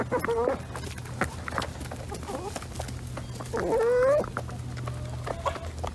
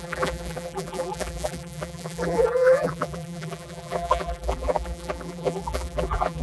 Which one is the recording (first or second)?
first